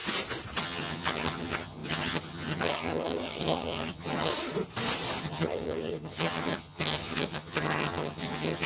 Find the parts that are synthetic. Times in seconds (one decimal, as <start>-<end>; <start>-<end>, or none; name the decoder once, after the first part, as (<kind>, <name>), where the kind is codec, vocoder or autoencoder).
0.6-4.3 (vocoder, HiFi-GAN); 5.2-8.7

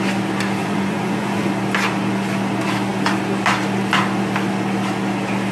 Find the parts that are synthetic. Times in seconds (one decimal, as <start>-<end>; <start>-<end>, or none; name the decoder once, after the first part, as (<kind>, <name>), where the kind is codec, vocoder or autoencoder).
0.6-1.5 (vocoder, Vocos)

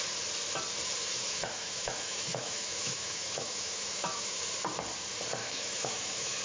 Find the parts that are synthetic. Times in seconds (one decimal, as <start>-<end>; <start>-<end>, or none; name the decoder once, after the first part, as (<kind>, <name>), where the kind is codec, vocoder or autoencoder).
1.0-4.4 (autoencoder, DAC-VAE); 5.4-6.4

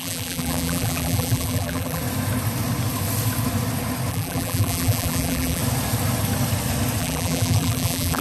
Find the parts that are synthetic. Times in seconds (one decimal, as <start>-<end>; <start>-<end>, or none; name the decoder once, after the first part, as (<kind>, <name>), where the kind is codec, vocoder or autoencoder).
0.0-2.0 (vocoder, BigVGAN v2); 4.1-5.6; 7.0-8.2

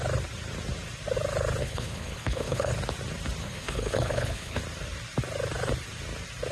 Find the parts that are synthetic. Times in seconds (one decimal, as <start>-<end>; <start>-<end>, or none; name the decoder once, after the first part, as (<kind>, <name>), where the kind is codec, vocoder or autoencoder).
1.6-2.7 (codec, HILCodec); 3.4-4.6

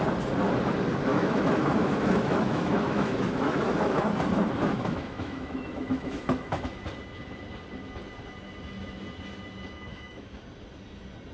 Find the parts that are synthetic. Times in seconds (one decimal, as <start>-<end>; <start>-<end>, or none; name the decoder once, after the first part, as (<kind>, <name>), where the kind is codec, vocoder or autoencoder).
1.1-4.0 (autoencoder, DAC-VAE); 4.6-6.8; 9.9-10.4

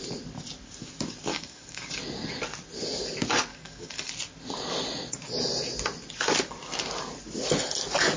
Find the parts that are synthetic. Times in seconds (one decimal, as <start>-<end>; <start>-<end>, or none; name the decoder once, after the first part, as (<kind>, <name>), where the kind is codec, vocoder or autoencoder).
1.3-1.9 (codec, DAC); 3.5-4.1

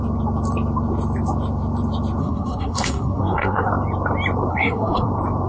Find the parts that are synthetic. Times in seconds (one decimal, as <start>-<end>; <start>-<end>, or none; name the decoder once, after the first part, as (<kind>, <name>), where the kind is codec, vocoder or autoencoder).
2.2-3.7 (codec, SNAC); 4.5-5.1